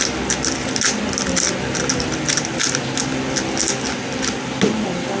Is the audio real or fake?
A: real